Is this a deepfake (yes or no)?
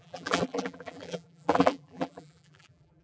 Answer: yes